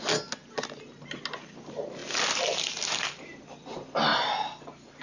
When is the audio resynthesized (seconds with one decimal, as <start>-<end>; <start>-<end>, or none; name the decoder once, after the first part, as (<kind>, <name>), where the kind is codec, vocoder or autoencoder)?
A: none